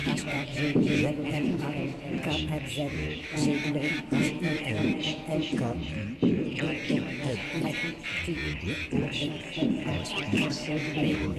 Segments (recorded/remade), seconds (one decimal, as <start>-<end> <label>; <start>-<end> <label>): 0.0-5.8 remade; 5.8-6.9 recorded; 6.9-7.6 remade; 7.6-10.2 recorded; 10.2-11.4 remade